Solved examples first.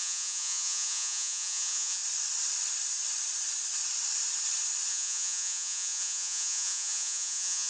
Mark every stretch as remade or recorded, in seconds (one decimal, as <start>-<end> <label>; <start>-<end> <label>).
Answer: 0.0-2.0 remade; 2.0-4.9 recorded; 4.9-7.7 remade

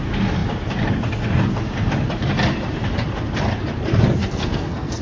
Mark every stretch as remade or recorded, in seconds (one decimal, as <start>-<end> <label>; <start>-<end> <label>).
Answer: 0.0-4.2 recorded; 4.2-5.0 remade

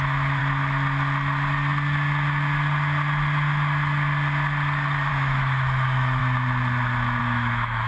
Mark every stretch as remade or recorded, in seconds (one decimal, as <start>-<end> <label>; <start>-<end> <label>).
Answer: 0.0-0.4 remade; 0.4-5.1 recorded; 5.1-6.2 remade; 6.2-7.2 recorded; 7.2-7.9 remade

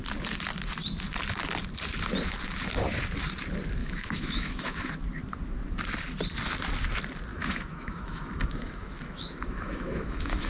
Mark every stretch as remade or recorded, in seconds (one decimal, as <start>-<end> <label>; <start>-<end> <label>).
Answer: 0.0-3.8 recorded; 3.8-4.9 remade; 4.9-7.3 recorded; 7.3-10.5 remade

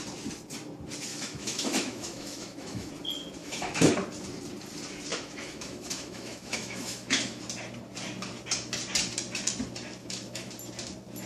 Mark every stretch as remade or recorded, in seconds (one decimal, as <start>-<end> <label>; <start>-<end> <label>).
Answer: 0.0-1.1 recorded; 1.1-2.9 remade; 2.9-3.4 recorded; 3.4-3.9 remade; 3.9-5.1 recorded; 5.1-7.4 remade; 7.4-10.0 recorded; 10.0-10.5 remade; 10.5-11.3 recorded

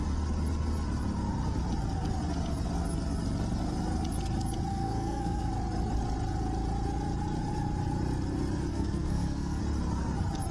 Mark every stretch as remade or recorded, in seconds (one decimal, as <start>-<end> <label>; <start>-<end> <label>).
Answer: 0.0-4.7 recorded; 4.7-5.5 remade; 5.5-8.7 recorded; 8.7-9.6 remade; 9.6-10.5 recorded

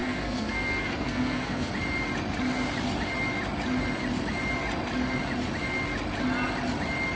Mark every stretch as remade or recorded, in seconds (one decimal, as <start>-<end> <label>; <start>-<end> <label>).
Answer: 0.0-1.7 remade; 1.7-7.2 recorded